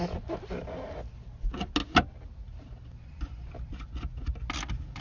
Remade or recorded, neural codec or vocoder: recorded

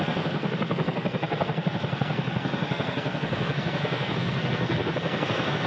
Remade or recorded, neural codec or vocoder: remade, codec, SNAC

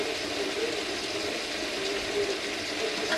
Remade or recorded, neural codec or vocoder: recorded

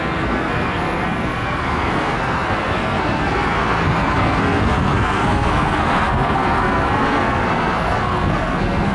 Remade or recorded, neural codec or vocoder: remade, codec, SNAC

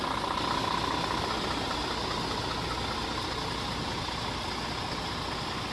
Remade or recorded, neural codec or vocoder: recorded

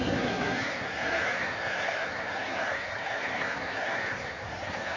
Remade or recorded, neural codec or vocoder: remade, codec, SNAC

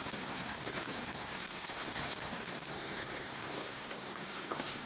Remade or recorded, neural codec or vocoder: remade, codec, SNAC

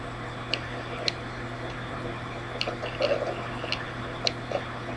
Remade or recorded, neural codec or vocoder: recorded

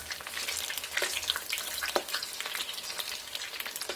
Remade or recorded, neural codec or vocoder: recorded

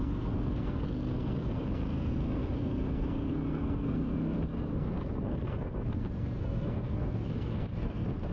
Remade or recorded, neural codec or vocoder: remade, codec, SNAC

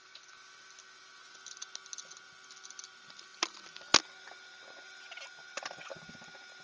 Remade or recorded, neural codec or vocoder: recorded